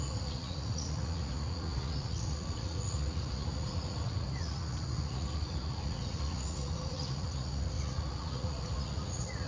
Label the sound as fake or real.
fake